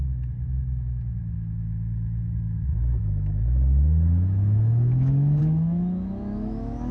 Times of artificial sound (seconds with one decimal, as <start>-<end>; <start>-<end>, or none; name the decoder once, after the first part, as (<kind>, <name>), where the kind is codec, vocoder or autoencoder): 0.0-6.9 (autoencoder, DAC-VAE)